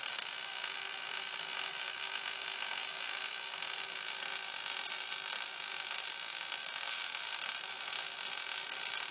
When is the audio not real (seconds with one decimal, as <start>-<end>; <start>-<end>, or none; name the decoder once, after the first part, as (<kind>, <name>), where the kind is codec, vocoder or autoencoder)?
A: none